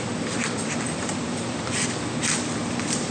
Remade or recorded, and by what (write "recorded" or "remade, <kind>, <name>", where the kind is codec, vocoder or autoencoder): remade, vocoder, BigVGAN v2